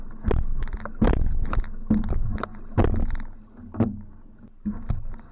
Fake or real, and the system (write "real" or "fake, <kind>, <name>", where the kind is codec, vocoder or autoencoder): real